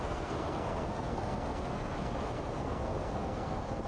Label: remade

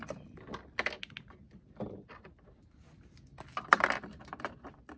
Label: recorded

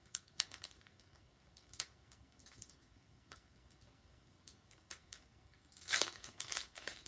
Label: remade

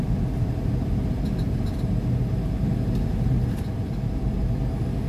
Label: recorded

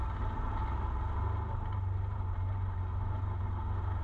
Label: recorded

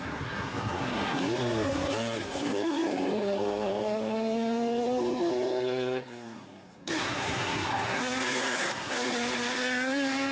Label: remade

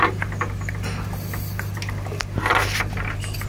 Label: recorded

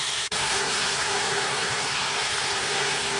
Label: remade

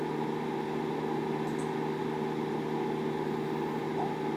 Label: recorded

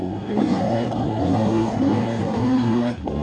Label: remade